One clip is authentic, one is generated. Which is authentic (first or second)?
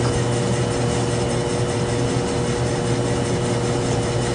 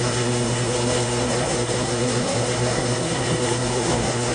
first